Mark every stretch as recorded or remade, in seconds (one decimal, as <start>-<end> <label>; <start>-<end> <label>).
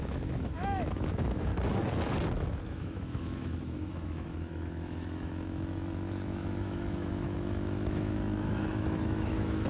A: 0.0-1.5 remade; 1.5-2.5 recorded; 2.5-9.7 remade